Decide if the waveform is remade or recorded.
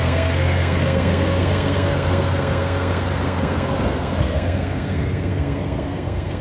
remade